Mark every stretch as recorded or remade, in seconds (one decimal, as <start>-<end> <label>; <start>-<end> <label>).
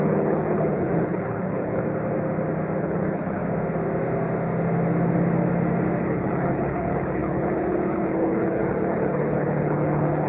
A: 0.0-1.8 remade; 1.8-2.8 recorded; 2.8-3.4 remade; 3.4-6.0 recorded; 6.0-10.3 remade